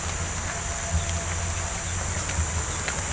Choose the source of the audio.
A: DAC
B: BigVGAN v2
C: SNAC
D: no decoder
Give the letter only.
D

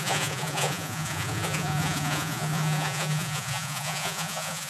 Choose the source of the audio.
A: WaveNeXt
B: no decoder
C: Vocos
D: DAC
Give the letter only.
C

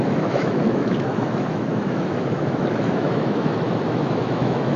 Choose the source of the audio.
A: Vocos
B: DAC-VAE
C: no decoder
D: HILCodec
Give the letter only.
B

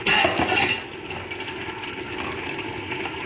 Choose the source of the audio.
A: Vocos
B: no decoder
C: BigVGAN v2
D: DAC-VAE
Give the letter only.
B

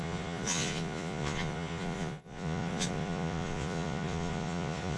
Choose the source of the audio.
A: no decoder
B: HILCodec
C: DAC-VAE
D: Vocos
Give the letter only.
D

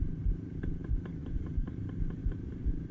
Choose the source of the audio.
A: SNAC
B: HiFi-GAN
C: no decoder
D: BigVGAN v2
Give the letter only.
D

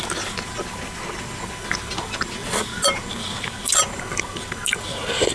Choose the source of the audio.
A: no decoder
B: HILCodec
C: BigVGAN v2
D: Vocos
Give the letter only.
A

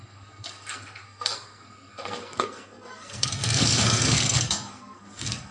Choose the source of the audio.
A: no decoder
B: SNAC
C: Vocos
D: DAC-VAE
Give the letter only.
B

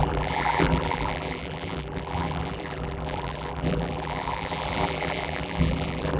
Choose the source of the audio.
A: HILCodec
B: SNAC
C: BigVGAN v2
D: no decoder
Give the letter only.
C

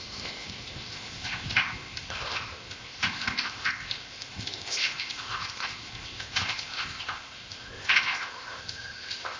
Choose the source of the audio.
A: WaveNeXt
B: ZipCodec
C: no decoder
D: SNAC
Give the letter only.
B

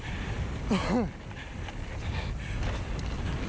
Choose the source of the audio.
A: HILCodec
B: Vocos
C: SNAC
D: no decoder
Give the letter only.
D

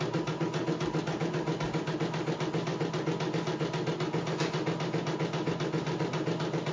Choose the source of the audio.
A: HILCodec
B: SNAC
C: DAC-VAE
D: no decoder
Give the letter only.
D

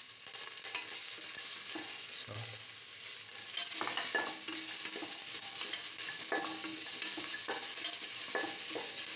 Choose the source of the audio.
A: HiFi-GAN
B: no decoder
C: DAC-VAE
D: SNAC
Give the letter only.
B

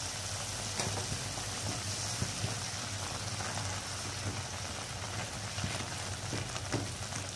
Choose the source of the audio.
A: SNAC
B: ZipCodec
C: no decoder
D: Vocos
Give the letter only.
C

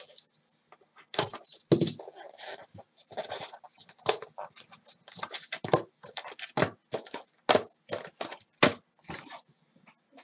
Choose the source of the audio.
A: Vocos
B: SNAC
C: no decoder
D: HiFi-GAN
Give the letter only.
C